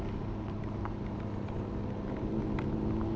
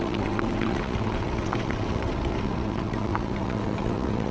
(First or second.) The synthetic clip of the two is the second